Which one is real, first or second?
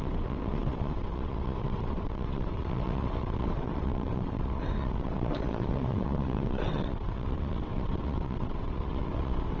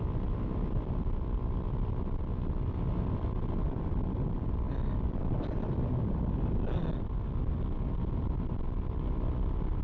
second